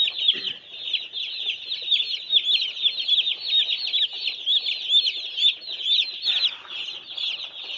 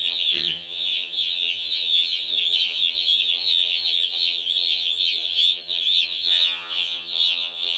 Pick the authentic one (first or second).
first